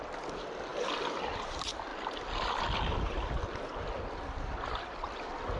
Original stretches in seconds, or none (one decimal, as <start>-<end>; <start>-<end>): 0.0-1.9